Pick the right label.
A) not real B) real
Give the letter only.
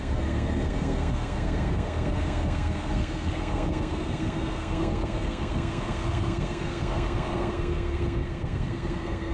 A